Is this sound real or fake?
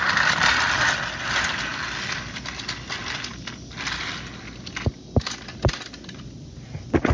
real